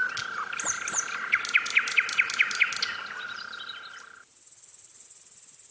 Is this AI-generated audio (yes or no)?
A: no